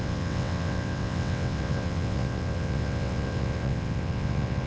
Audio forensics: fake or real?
fake